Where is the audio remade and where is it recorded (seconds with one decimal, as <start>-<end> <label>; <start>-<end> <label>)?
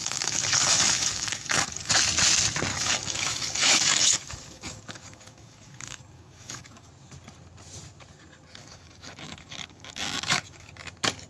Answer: 0.0-1.9 remade; 1.9-2.7 recorded; 2.7-6.9 remade; 6.9-8.6 recorded; 8.6-10.7 remade; 10.7-11.3 recorded